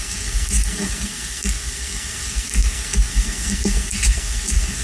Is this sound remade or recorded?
remade